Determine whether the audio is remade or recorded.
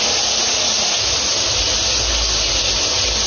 recorded